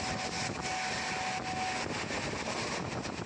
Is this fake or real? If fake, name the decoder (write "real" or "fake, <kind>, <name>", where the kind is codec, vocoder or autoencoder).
real